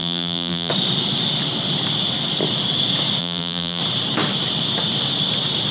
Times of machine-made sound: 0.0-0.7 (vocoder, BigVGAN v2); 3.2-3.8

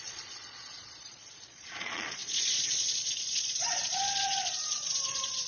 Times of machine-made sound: 0.0-5.5 (vocoder, Vocos)

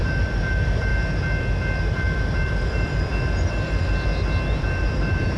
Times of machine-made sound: 0.0-0.9 (vocoder, BigVGAN v2); 1.8-3.1; 4.6-5.4

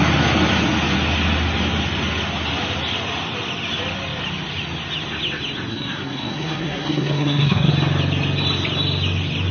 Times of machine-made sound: 5.7-7.7 (codec, SNAC)